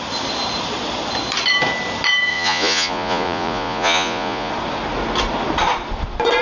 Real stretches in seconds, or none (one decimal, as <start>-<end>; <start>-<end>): 0.0-2.3; 4.5-6.4